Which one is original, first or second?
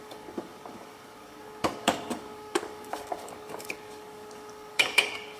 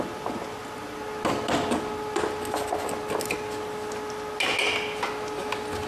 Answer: second